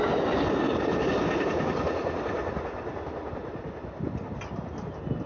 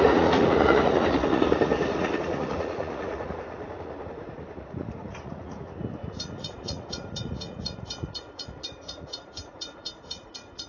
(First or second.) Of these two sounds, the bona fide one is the first